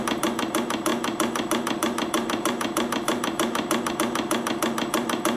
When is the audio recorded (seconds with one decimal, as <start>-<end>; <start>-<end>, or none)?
none